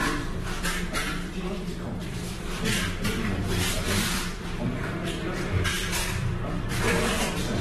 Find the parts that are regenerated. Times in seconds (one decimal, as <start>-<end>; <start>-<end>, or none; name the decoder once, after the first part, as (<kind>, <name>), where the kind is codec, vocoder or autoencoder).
0.0-7.6 (vocoder, BigVGAN v2)